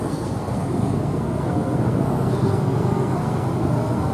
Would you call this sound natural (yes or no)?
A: no